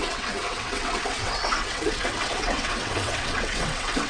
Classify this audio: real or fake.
fake